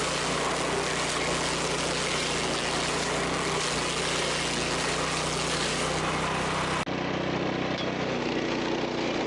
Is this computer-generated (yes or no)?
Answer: no